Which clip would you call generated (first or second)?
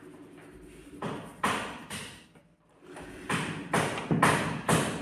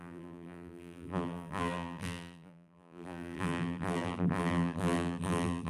second